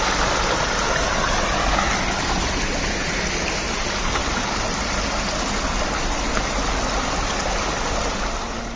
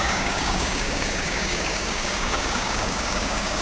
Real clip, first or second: first